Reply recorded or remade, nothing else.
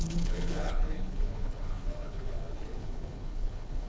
remade